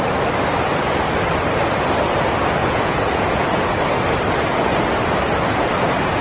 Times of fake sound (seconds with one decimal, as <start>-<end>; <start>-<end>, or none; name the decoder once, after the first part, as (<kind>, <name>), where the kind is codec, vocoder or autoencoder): 2.6-3.8 (vocoder, Vocos)